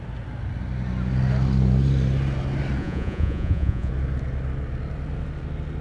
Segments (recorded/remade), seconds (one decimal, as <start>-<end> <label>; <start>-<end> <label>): 0.0-2.8 recorded; 2.8-3.9 remade; 3.9-5.8 recorded